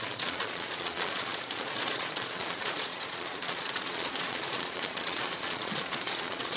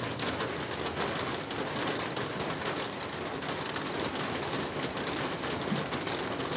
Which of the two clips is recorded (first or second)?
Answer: second